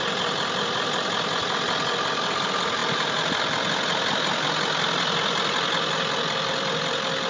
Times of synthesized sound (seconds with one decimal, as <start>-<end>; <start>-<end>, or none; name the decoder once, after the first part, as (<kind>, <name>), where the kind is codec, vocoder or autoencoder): 2.8-3.3 (vocoder, BigVGAN v2)

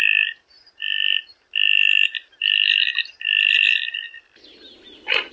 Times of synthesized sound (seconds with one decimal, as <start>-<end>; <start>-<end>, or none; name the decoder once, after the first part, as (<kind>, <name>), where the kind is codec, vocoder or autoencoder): none

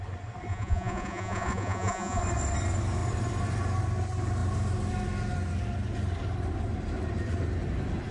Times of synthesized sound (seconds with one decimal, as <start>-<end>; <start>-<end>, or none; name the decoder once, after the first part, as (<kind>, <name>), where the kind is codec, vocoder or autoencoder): 0.5-2.2 (vocoder, Vocos)

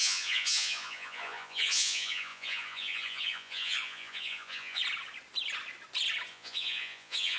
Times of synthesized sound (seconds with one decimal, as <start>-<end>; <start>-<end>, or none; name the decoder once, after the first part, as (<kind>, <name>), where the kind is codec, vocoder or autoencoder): 0.0-4.8 (vocoder, Vocos); 6.3-7.4

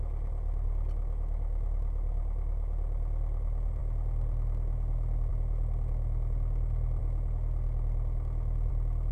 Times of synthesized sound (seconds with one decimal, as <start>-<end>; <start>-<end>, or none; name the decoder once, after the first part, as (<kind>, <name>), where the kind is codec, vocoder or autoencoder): none